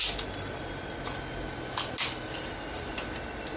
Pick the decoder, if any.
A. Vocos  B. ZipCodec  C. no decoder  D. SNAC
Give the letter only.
C